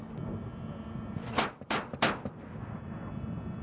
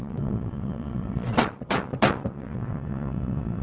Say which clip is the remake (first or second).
second